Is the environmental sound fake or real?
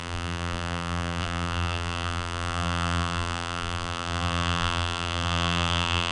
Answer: fake